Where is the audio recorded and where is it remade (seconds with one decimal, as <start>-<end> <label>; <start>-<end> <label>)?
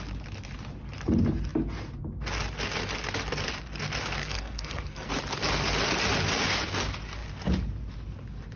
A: 0.0-4.2 recorded; 4.2-5.1 remade; 5.1-8.6 recorded